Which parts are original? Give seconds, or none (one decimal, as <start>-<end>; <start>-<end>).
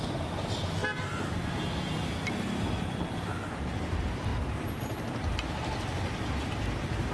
0.0-7.1